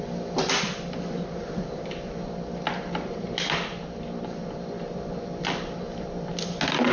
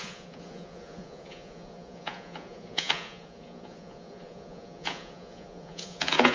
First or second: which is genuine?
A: first